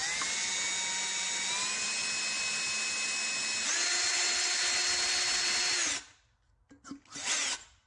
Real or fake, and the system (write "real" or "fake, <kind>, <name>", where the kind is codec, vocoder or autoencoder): real